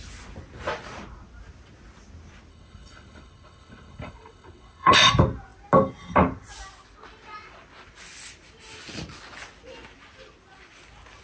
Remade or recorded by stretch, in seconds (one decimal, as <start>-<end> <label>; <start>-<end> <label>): 0.0-2.5 recorded; 2.5-5.1 remade; 5.1-11.2 recorded